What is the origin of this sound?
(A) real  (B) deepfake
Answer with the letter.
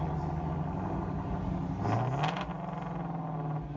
A